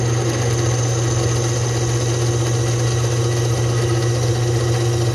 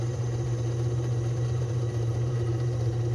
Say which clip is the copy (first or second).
second